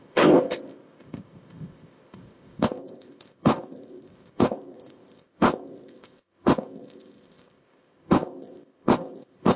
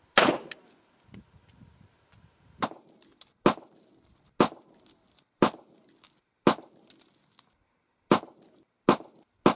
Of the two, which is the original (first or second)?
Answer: second